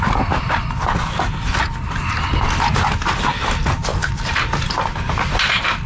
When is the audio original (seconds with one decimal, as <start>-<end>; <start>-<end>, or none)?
0.0-5.9